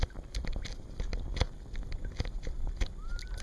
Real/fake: real